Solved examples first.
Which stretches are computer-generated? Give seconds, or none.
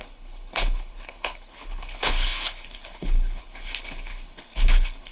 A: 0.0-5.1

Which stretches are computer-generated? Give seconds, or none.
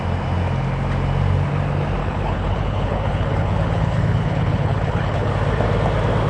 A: 2.0-5.3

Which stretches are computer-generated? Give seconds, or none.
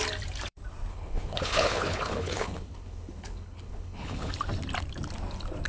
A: 0.9-4.3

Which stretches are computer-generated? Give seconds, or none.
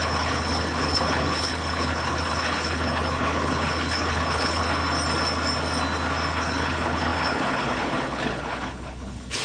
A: 0.0-4.8; 6.3-9.4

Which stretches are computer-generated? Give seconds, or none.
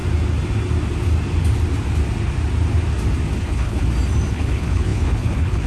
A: 3.4-3.8; 4.3-5.7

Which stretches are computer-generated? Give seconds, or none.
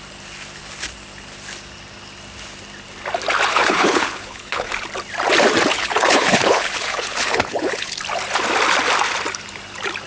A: 3.5-4.7; 5.7-8.0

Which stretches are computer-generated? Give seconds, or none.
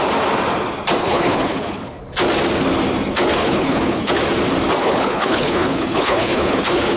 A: 1.0-2.0; 3.4-4.1; 4.8-7.0